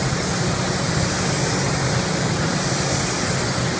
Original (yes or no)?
yes